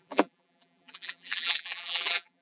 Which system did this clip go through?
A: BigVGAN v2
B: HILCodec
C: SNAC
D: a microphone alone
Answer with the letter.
A